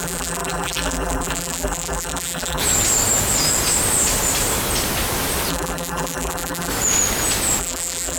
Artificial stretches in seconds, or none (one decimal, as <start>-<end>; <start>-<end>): 0.0-2.6; 5.5-6.7; 7.6-8.2